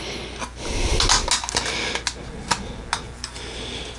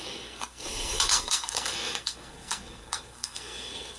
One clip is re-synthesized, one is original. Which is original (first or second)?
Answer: first